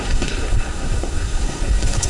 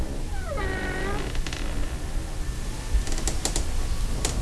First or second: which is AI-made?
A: first